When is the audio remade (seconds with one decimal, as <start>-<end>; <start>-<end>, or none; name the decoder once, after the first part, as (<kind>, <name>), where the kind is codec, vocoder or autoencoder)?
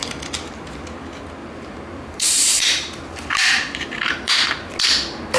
0.0-0.6 (vocoder, BigVGAN v2); 1.4-4.5